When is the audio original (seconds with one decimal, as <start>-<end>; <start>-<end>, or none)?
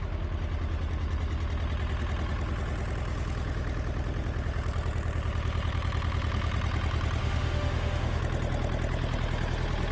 0.0-7.2; 8.2-9.9